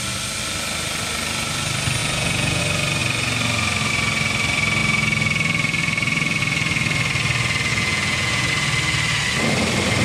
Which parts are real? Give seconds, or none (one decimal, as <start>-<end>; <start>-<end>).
0.0-2.0; 2.6-7.7; 8.5-10.0